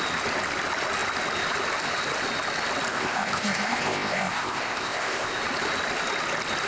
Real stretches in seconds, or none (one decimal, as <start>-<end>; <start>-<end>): 0.0-2.9; 5.4-6.7

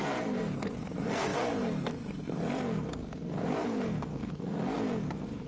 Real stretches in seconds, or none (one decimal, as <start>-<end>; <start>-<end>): none